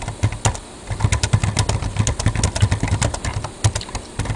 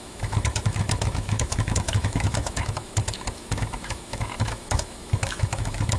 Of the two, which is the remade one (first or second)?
second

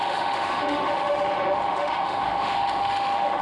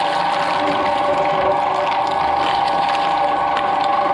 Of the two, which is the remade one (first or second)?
first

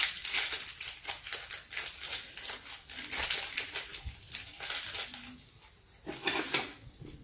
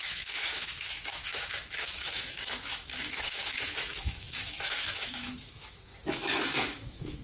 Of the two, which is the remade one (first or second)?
second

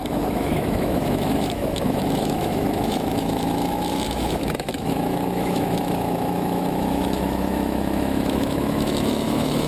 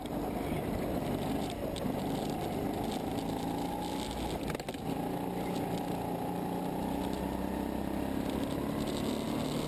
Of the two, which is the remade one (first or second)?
first